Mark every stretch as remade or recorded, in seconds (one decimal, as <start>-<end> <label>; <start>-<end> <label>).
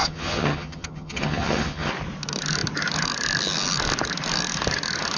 0.0-1.9 remade; 1.9-5.2 recorded